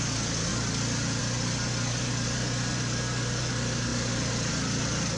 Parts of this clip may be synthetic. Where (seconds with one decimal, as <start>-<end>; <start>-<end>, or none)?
none